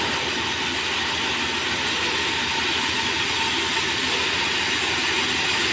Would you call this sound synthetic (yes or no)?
no